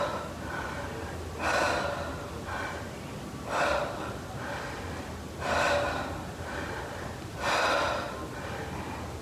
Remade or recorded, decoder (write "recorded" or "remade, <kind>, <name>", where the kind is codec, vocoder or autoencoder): recorded